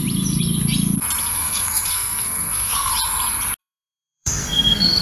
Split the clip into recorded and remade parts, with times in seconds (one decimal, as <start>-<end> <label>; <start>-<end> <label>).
0.0-1.2 recorded; 1.2-2.9 remade; 2.9-3.6 recorded; 3.6-5.0 remade